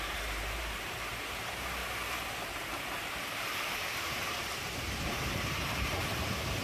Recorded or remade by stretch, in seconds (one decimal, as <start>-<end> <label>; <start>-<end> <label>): 0.0-6.6 remade